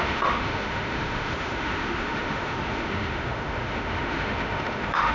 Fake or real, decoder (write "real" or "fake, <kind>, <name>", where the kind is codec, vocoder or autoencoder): fake, autoencoder, DAC-VAE